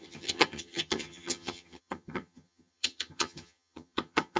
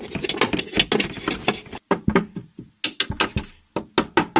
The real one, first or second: second